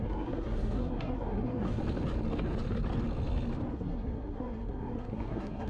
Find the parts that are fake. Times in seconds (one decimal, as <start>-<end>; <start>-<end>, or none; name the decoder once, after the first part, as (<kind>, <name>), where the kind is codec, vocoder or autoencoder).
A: 0.0-1.8 (codec, SNAC); 3.7-5.7

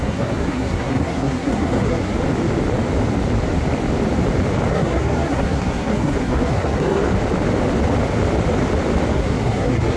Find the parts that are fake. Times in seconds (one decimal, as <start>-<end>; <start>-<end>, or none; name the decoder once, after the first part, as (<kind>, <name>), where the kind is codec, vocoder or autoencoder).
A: 0.0-2.2 (codec, SNAC); 4.7-7.0; 9.1-10.0

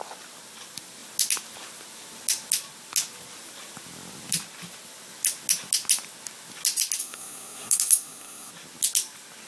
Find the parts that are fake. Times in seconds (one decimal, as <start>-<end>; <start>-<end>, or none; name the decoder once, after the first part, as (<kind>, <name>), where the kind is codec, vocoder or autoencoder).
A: 7.0-8.5 (codec, SNAC)

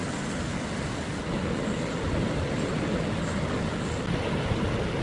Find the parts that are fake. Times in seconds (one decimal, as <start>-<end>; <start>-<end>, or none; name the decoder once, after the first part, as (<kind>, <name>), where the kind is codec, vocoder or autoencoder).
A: none

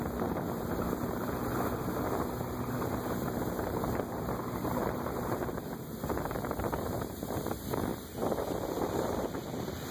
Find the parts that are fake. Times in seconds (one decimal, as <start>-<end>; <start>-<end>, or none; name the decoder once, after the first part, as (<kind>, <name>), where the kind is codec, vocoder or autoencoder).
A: none

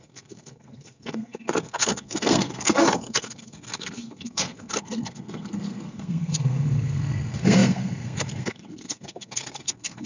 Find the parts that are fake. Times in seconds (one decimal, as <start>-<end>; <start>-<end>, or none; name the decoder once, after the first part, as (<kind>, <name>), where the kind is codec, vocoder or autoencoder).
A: 0.0-10.1 (codec, SNAC)

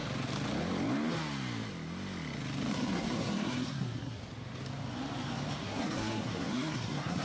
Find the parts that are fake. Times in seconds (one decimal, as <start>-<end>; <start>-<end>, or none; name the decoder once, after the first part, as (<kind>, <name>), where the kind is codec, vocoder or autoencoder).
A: 2.7-4.2 (codec, SNAC); 5.6-7.2

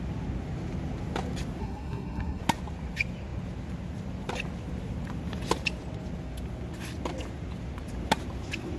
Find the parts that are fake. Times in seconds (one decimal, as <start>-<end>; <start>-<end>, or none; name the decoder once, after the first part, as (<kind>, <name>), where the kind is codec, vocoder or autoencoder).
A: 1.6-2.4 (codec, SNAC)